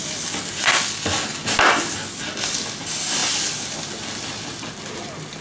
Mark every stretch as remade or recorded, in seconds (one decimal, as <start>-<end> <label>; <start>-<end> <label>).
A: 0.0-5.4 recorded